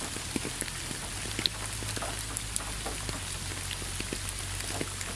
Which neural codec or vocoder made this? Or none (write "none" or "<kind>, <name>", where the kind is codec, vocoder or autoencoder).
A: none